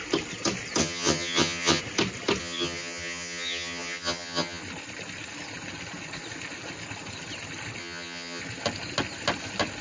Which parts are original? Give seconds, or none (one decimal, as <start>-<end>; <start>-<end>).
0.0-0.8; 1.8-2.4; 4.6-7.8; 8.4-9.8